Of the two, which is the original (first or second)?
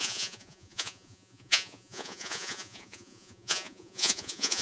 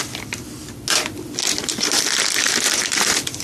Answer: second